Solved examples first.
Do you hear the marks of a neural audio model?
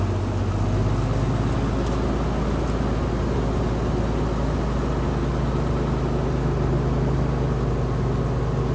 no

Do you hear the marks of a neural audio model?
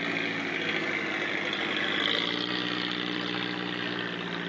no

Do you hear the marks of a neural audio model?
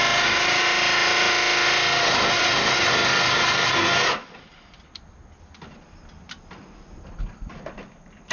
no